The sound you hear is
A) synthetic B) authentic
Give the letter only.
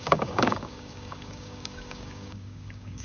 A